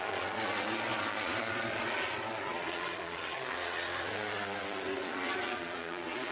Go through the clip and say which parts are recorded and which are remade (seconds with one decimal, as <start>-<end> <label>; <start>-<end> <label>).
0.0-6.3 remade

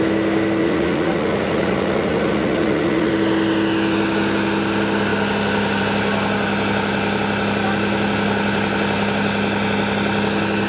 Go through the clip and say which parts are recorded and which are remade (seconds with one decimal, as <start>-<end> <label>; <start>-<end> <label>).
0.0-0.6 recorded; 0.6-3.1 remade; 3.1-10.7 recorded